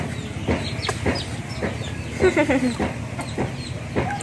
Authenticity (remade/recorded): recorded